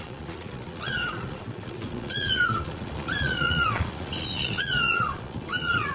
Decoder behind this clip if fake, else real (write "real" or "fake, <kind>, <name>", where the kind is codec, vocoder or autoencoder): fake, vocoder, Vocos